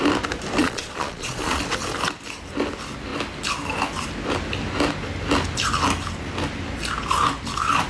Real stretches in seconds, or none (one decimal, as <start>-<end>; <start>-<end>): 0.0-0.6; 1.6-7.9